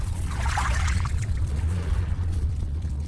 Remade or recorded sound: remade